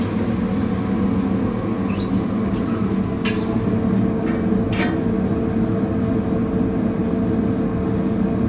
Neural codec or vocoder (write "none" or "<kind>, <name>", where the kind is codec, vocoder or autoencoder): none